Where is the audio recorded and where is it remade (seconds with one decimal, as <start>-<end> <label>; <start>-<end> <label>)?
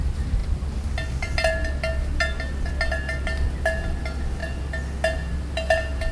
0.0-6.1 recorded